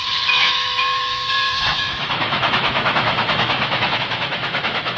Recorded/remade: remade